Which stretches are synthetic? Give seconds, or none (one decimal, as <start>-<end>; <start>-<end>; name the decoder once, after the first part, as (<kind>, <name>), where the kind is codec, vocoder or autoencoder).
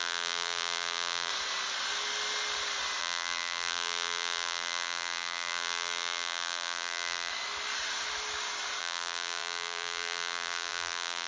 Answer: 0.0-1.3 (vocoder, BigVGAN v2); 3.0-7.3; 8.8-11.3